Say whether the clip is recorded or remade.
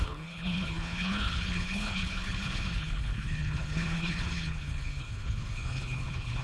remade